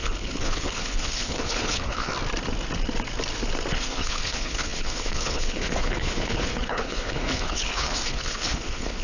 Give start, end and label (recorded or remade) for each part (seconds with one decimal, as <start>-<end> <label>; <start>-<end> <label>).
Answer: 0.0-2.1 remade; 2.1-3.7 recorded; 3.7-9.0 remade